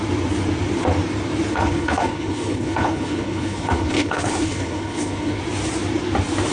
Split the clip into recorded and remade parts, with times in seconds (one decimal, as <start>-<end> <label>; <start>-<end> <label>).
0.0-1.5 recorded; 1.5-5.4 remade; 5.4-6.5 recorded